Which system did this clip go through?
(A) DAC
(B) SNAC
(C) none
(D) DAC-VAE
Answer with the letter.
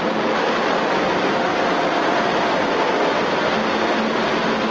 C